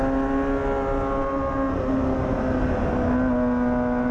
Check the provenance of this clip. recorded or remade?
recorded